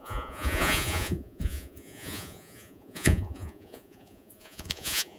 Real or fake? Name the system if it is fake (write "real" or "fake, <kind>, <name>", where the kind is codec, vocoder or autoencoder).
fake, vocoder, Vocos